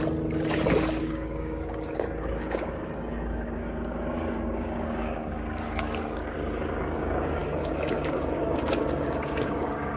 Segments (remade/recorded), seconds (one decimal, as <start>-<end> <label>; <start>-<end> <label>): 0.0-1.0 recorded; 1.0-10.0 remade